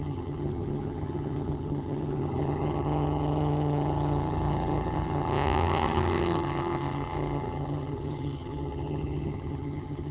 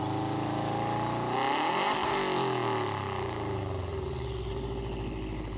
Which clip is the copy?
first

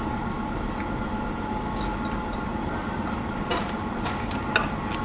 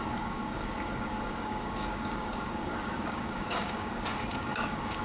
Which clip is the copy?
second